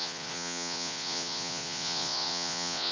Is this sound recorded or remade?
remade